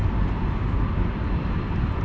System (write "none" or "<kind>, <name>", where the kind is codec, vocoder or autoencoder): none